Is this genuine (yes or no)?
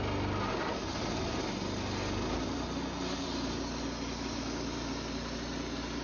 yes